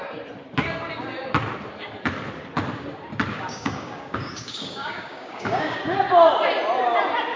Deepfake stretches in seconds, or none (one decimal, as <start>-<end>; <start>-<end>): 3.3-5.8